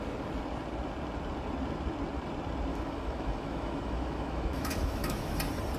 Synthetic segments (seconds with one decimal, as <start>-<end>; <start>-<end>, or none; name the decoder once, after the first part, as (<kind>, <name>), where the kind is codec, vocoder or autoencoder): 2.7-5.3 (autoencoder, DAC-VAE)